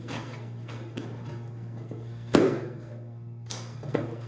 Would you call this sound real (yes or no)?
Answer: no